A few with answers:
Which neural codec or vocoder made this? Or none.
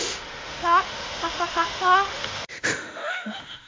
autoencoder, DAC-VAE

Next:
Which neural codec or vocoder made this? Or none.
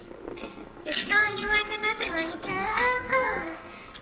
codec, SNAC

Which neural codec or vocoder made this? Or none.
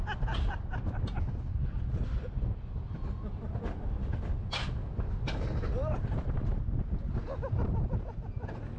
none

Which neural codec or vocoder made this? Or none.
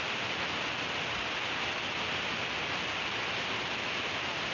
none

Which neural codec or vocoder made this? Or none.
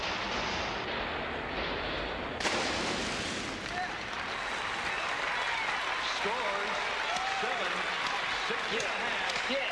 none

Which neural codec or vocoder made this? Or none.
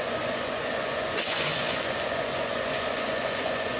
vocoder, Vocos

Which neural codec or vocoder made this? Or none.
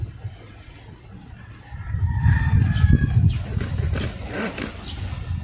none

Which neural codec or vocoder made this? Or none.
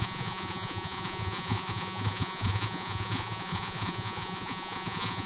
vocoder, Vocos